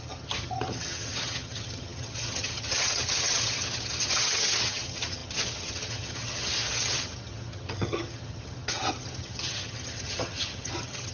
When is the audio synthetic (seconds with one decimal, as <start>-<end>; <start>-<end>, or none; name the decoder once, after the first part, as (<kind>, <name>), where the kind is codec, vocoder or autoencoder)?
0.0-11.1 (vocoder, HiFi-GAN)